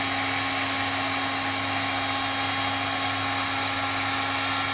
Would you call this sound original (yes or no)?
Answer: yes